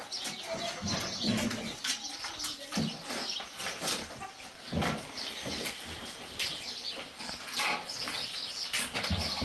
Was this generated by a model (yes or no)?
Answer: no